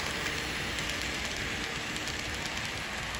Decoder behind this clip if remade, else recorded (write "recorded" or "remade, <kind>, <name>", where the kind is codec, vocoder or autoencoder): recorded